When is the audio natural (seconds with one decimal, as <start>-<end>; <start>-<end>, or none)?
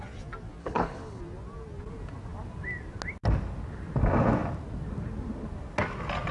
0.0-0.6; 1.2-6.3